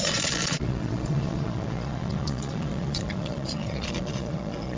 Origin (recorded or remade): remade